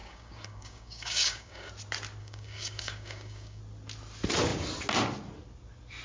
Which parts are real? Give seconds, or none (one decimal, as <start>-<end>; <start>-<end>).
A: 1.7-2.2; 3.6-6.0